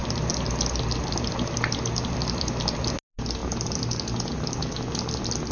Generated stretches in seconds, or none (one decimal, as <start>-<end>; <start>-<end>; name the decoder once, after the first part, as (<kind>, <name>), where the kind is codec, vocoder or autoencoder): none